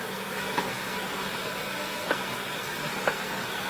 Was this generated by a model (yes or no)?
yes